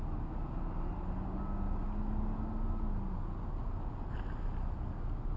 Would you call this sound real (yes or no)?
yes